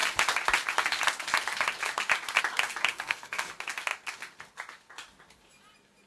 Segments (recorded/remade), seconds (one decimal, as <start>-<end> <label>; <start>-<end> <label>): 0.0-2.9 recorded; 2.9-3.5 remade; 3.5-6.1 recorded

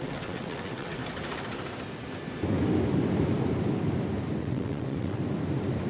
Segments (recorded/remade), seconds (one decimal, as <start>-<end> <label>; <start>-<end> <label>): 0.0-1.0 remade; 1.0-4.4 recorded; 4.4-5.2 remade; 5.2-5.9 recorded

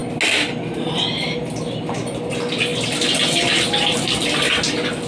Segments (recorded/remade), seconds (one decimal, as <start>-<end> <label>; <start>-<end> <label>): 0.0-5.1 recorded

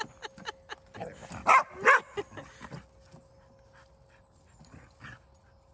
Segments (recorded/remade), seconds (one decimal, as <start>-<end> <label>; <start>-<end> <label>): 0.0-5.7 recorded

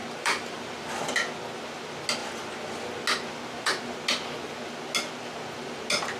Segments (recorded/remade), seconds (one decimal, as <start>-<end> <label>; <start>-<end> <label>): 0.0-0.9 remade; 0.9-6.2 recorded

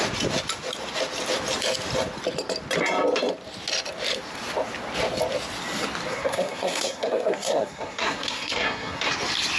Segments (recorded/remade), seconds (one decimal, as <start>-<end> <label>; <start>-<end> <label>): 0.0-6.1 recorded; 6.1-9.1 remade; 9.1-9.6 recorded

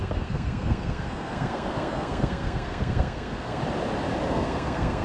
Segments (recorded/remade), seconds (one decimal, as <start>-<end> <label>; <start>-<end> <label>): 0.0-3.6 remade; 3.6-4.3 recorded; 4.3-5.0 remade